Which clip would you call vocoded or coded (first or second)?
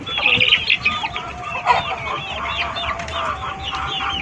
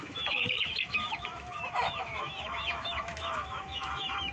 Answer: second